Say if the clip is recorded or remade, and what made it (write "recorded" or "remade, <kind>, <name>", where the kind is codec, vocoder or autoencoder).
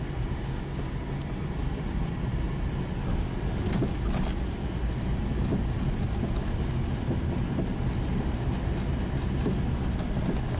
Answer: recorded